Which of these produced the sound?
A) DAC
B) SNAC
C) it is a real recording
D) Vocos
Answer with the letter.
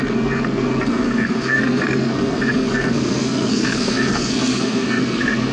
B